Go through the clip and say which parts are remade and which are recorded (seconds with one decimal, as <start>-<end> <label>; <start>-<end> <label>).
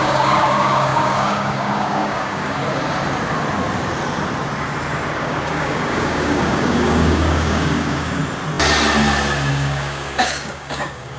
0.0-2.6 remade; 2.6-5.2 recorded; 5.2-8.2 remade; 8.2-9.5 recorded; 9.5-11.2 remade